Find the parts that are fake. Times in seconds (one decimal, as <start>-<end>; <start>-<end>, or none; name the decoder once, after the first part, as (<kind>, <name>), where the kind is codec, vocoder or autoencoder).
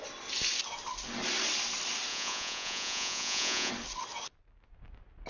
2.1-3.7 (vocoder, Vocos)